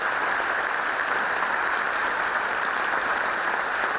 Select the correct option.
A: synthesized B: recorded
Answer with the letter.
B